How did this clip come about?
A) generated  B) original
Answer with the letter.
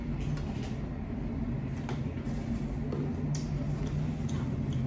B